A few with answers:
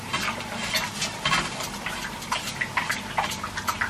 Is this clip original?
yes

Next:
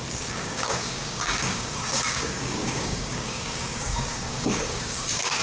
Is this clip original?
no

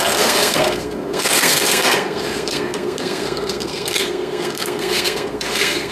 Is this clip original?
no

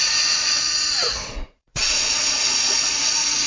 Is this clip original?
no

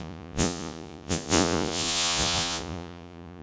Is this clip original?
no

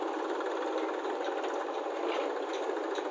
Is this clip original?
yes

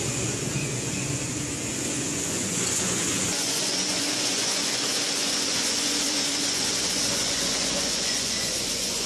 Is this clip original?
no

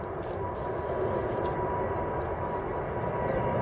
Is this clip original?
yes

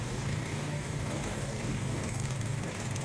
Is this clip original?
no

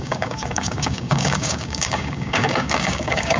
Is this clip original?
no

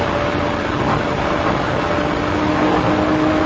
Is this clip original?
yes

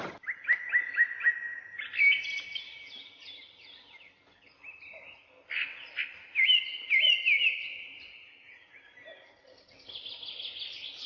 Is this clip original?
yes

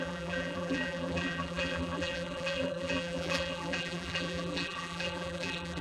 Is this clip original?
no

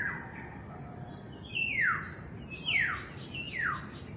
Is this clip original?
yes